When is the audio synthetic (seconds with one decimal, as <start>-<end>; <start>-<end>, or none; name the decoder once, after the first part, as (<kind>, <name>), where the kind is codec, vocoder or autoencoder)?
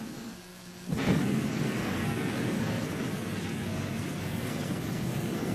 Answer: 0.0-5.5 (codec, SNAC)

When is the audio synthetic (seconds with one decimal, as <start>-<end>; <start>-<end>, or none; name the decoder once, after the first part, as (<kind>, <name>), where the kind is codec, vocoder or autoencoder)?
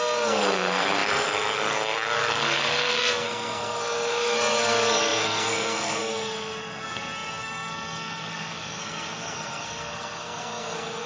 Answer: 0.0-11.1 (codec, SNAC)